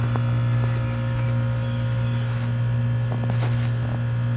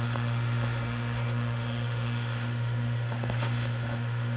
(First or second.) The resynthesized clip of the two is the second